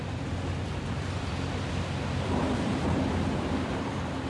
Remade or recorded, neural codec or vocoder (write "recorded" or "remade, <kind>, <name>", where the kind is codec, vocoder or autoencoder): remade, vocoder, BigVGAN v2